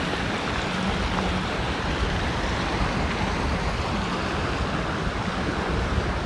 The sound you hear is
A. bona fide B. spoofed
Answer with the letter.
A